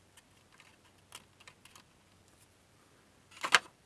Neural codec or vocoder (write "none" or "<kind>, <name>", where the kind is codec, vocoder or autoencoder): none